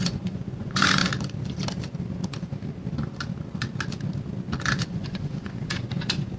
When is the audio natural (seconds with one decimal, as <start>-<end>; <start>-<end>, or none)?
1.0-4.8